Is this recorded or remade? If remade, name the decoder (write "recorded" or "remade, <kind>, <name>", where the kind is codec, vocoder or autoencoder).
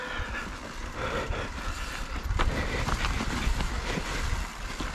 recorded